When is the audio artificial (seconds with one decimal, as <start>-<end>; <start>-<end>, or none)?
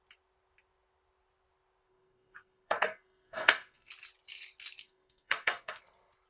1.9-3.9; 4.8-5.8